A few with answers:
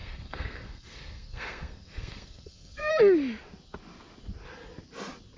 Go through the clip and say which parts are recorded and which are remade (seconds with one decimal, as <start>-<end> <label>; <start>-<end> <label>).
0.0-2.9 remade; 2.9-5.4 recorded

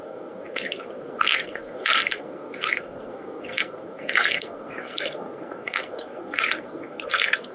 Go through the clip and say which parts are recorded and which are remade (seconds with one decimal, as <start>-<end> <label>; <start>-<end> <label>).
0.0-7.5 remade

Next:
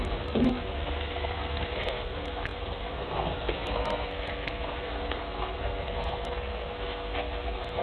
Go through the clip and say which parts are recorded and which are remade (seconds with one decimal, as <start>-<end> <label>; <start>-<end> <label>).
0.0-7.8 remade